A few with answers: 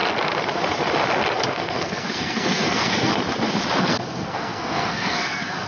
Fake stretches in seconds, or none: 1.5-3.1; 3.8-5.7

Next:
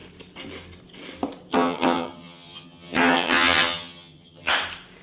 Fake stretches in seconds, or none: 1.5-4.5

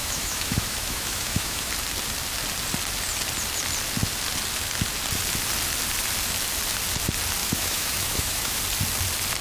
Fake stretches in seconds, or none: 0.0-1.7; 7.4-8.6

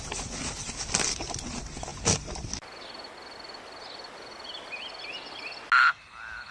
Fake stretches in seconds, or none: none

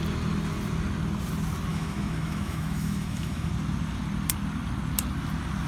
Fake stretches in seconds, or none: 1.7-3.5

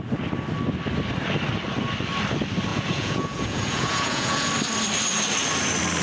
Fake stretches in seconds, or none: 2.7-4.5

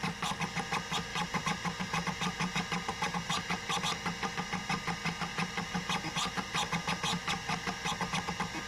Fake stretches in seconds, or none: 1.1-3.8; 5.3-6.3

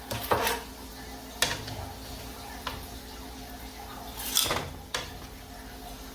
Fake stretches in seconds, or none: none